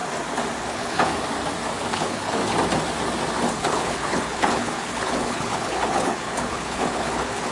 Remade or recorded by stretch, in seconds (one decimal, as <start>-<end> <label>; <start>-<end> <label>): 0.0-0.6 recorded; 0.6-1.1 remade; 1.1-1.9 recorded; 1.9-2.4 remade; 2.4-3.5 recorded; 3.5-7.5 remade